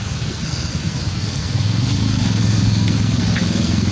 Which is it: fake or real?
fake